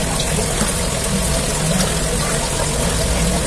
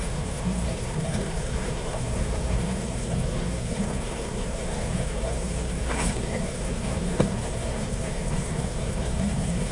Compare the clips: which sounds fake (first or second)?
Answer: second